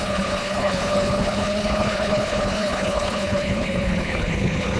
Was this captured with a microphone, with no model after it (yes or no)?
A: no